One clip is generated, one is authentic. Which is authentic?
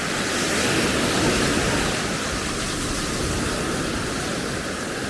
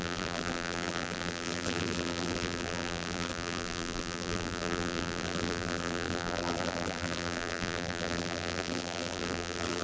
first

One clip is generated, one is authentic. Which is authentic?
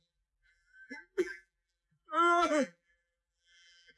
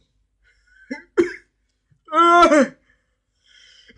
second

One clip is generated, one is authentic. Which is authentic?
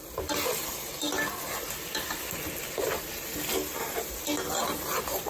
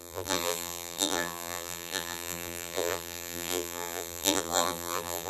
first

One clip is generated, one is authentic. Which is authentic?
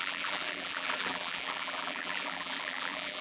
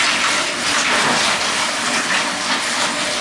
second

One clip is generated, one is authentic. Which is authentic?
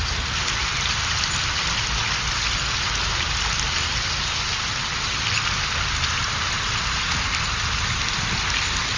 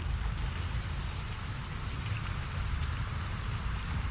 first